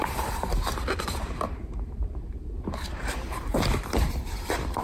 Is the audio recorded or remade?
remade